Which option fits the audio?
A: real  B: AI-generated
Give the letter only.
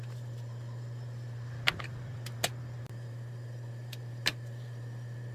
A